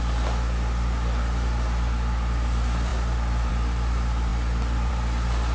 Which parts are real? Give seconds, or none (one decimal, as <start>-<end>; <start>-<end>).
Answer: 0.0-5.5